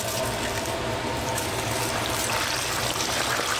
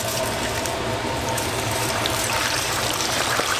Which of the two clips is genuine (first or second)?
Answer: first